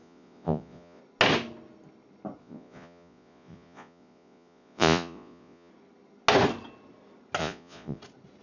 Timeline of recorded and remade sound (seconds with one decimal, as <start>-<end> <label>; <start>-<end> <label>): 0.0-1.0 remade; 1.0-2.4 recorded; 2.4-5.7 remade; 5.7-7.4 recorded; 7.4-8.0 remade; 8.0-8.4 recorded

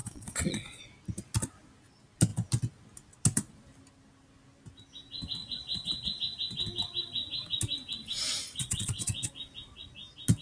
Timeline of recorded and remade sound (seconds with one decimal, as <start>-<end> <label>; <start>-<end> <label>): 0.0-0.8 remade; 0.8-5.4 recorded; 5.4-6.2 remade; 6.2-8.6 recorded; 8.6-9.3 remade; 9.3-10.4 recorded

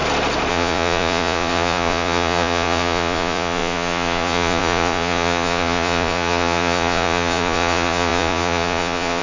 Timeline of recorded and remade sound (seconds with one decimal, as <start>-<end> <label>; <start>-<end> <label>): 0.0-0.5 recorded; 0.5-9.2 remade

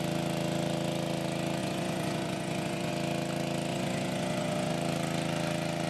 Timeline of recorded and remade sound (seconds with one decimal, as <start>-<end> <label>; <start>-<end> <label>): 0.0-1.6 recorded; 1.6-2.9 remade; 2.9-3.7 recorded; 3.7-4.7 remade; 4.7-5.9 recorded

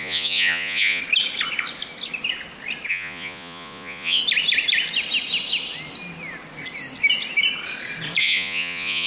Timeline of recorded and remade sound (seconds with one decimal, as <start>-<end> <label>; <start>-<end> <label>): 0.0-1.0 remade; 1.0-2.9 recorded; 2.9-4.2 remade; 4.2-8.2 recorded; 8.2-9.1 remade

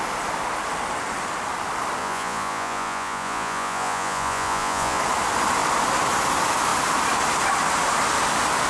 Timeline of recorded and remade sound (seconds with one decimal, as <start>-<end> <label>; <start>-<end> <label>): 0.0-2.0 recorded; 2.0-5.0 remade; 5.0-8.7 recorded

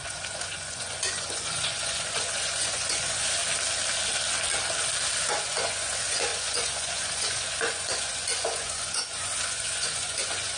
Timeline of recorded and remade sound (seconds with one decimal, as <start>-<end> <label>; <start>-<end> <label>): 0.0-3.4 remade; 3.4-5.4 recorded; 5.4-10.6 remade